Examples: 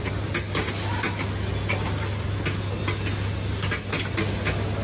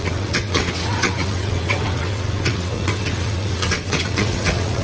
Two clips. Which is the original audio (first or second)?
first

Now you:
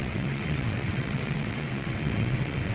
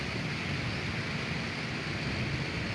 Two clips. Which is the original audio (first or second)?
second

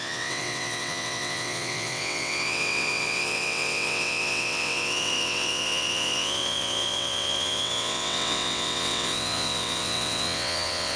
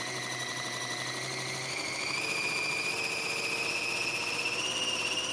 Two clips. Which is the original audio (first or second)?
second